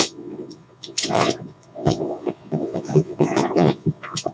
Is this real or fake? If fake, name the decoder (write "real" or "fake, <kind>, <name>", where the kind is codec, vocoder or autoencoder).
fake, vocoder, Vocos